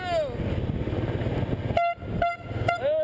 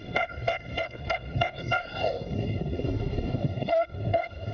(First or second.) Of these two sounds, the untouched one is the first